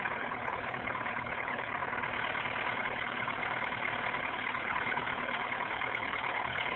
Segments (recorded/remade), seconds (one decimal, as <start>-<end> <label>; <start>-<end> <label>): 0.0-1.8 remade; 1.8-2.8 recorded; 2.8-3.4 remade; 3.4-4.2 recorded; 4.2-6.8 remade